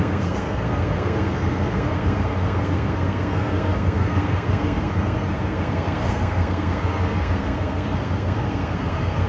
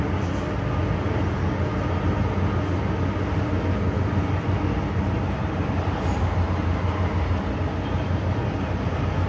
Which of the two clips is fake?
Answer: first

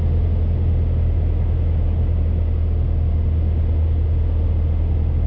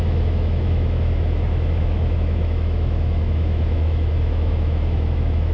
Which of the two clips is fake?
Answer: second